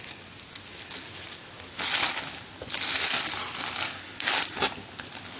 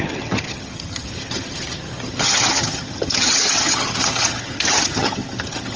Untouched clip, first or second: first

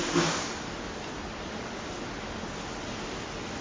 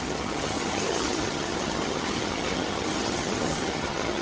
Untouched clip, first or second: first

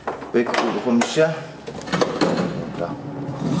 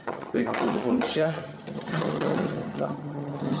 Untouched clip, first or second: first